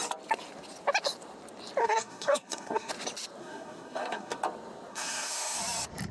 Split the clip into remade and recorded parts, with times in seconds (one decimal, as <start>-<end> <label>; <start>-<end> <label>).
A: 0.0-1.8 recorded; 1.8-2.9 remade; 2.9-3.4 recorded; 3.4-4.4 remade; 4.4-4.9 recorded; 4.9-5.6 remade; 5.6-6.1 recorded